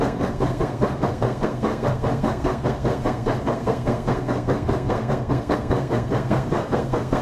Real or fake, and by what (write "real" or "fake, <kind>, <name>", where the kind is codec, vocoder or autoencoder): fake, codec, SNAC